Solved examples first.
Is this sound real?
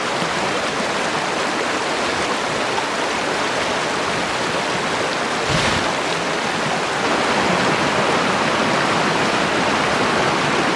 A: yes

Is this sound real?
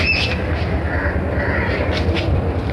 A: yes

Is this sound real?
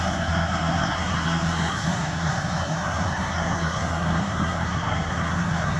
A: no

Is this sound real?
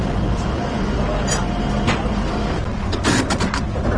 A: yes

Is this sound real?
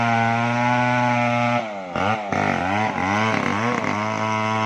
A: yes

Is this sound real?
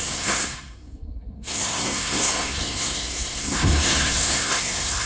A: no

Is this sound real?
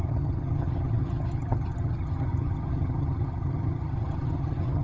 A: no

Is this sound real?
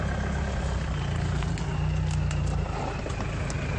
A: yes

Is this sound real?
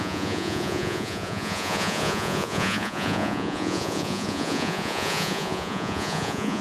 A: no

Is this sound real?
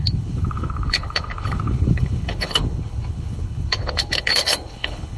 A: no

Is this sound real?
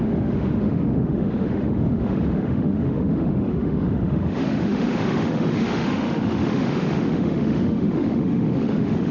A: no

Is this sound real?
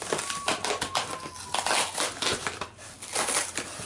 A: yes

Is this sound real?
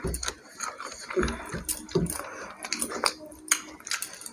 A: yes